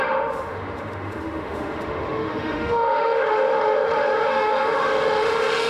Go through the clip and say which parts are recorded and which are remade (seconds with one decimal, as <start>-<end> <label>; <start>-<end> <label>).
0.0-5.7 remade